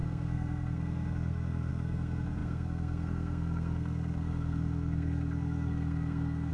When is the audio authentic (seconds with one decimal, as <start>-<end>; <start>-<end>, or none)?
none